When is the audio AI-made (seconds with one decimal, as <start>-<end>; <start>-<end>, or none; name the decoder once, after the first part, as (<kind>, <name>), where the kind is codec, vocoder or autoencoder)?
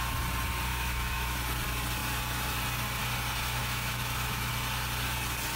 0.7-1.4 (autoencoder, DAC-VAE); 3.6-4.5